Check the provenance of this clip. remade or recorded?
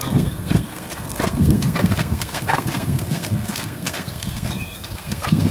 remade